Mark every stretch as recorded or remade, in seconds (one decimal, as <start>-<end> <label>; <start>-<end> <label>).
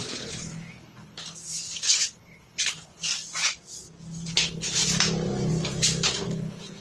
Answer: 0.0-3.1 remade; 3.1-4.3 recorded; 4.3-4.8 remade; 4.8-6.2 recorded; 6.2-6.8 remade